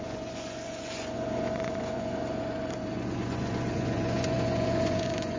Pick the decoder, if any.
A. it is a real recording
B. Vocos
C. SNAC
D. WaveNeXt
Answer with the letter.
B